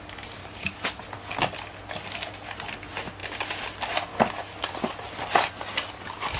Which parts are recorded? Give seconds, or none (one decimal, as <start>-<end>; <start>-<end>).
0.0-0.4; 1.0-6.4

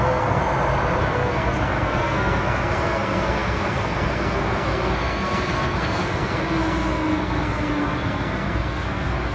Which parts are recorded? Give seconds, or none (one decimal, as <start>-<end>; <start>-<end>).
0.4-1.0

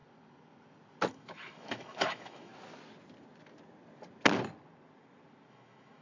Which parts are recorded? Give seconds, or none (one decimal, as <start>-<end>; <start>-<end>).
0.0-1.1; 2.5-5.5

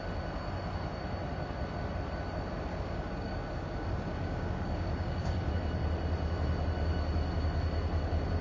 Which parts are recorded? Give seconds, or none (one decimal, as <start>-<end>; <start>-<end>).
0.0-2.7; 5.5-8.4

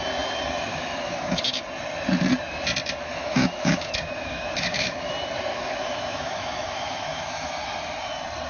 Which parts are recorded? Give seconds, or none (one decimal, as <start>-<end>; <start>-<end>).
0.0-0.7; 1.6-3.0; 5.1-5.5; 7.5-8.5